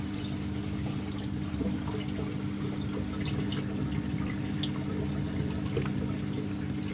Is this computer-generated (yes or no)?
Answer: no